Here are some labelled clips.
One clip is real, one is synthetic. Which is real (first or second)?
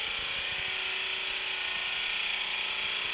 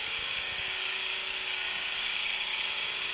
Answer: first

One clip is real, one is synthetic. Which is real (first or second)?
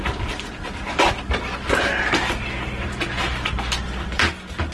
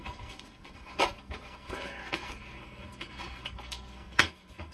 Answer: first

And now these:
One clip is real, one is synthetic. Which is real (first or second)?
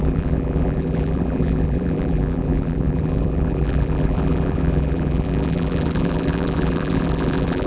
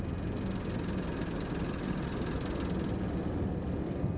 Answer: second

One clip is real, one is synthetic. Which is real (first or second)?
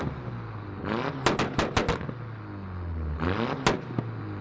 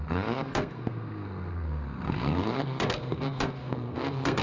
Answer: first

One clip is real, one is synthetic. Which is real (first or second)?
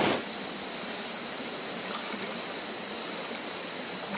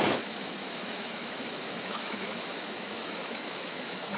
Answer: first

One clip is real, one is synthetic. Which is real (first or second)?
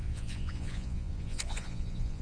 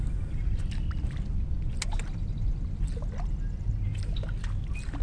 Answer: second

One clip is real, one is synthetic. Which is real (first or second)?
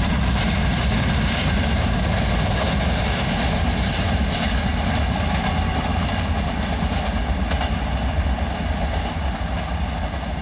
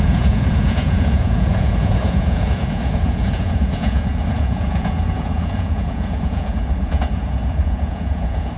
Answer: first